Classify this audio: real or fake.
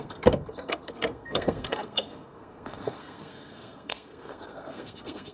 fake